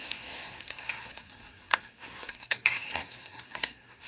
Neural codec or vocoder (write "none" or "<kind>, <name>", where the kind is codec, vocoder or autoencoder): codec, SNAC